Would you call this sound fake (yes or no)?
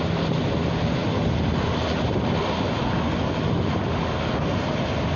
no